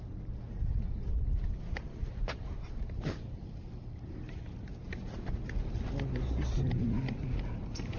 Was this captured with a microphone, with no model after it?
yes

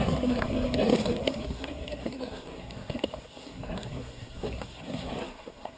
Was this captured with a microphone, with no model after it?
no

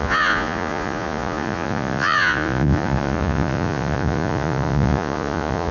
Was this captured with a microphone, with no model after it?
no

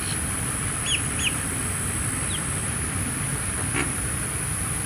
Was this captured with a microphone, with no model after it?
yes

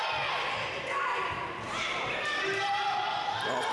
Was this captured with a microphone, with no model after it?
no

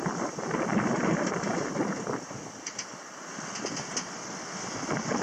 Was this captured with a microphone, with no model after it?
yes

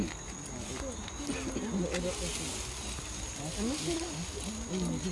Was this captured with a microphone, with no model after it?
yes